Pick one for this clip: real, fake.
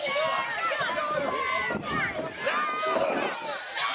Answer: real